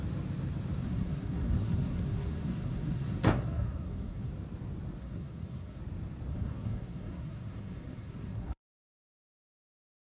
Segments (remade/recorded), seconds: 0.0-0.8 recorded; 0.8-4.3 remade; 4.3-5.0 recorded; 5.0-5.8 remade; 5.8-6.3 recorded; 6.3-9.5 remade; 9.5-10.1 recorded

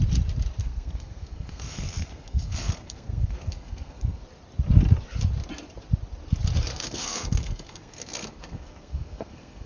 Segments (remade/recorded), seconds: 0.0-0.6 recorded; 0.6-4.2 remade; 4.2-6.7 recorded; 6.7-9.7 remade

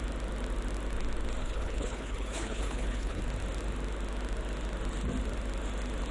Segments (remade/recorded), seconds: 0.0-1.4 recorded; 1.4-3.2 remade; 3.2-6.1 recorded

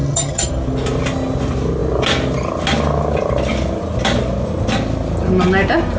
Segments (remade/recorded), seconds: 0.0-0.5 remade; 0.5-6.0 recorded

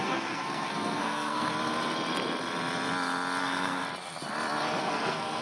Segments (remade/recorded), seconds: 0.0-1.5 remade; 1.5-3.4 recorded; 3.4-3.8 remade; 3.8-4.8 recorded; 4.8-5.4 remade